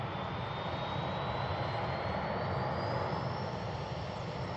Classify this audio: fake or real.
real